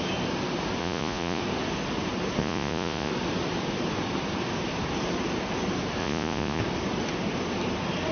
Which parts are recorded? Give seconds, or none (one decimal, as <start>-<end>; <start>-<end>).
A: 0.0-0.8; 1.4-2.4; 3.1-6.0; 6.6-8.1